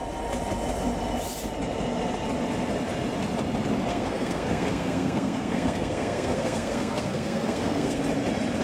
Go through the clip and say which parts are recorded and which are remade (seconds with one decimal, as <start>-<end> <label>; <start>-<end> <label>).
0.0-3.9 recorded; 3.9-8.0 remade; 8.0-8.6 recorded